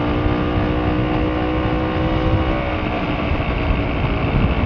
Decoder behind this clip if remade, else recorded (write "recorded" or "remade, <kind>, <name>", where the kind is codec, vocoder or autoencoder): recorded